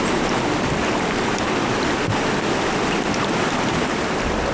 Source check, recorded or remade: recorded